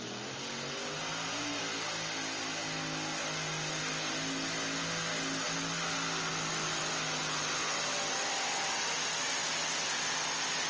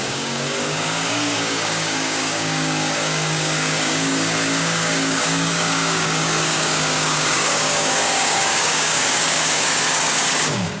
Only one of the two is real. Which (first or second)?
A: first